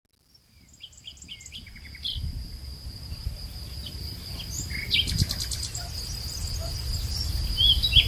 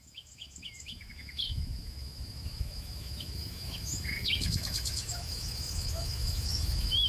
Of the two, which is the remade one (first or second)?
second